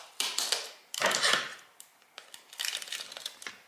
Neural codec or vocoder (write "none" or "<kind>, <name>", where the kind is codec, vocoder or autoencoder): none